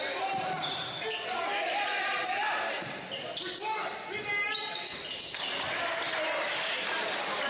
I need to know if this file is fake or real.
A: real